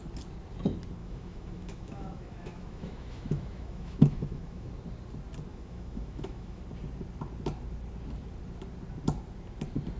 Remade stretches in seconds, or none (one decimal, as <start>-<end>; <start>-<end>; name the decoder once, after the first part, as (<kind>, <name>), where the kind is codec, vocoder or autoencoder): 1.0-4.7 (autoencoder, DAC-VAE); 5.5-6.6